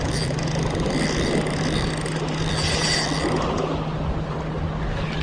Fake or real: real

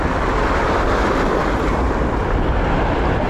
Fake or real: real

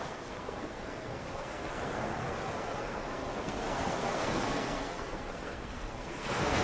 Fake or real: fake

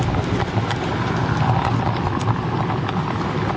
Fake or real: real